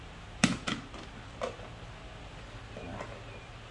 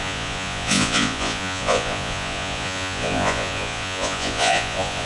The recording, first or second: first